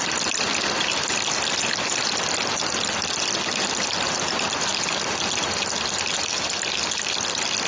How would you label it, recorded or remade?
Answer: recorded